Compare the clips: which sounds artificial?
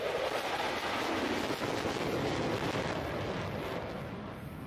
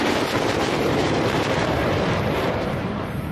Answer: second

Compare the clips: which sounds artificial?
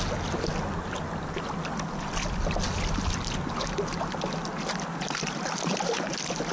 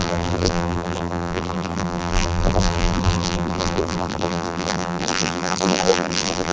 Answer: second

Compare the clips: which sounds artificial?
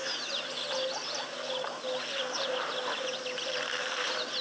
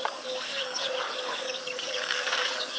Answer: second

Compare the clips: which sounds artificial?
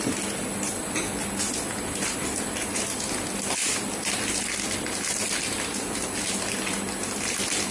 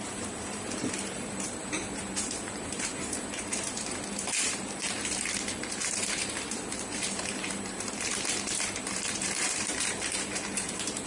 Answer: second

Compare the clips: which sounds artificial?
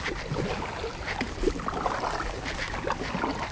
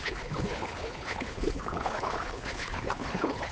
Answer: second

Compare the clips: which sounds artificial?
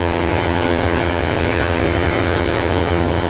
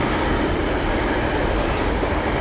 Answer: first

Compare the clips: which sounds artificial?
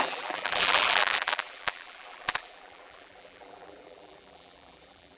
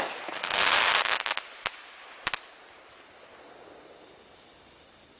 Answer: first